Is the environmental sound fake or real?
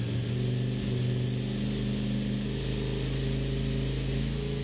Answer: real